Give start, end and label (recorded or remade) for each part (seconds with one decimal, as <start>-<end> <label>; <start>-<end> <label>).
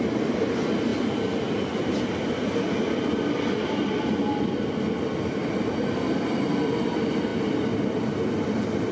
0.0-8.9 recorded